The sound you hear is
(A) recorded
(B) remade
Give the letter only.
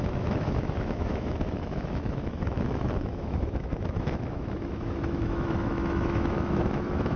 B